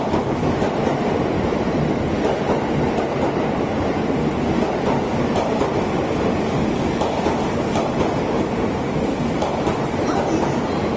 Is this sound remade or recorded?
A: recorded